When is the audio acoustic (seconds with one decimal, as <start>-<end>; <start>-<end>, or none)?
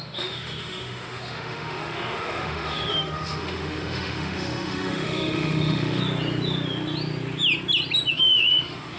6.0-8.1